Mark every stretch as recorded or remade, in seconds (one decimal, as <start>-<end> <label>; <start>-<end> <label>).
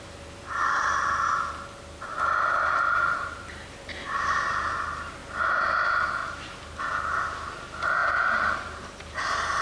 0.0-2.1 recorded; 2.1-4.4 remade; 4.4-6.2 recorded; 6.2-6.8 remade; 6.8-9.6 recorded